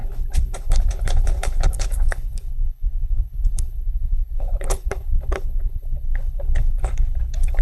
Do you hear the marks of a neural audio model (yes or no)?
yes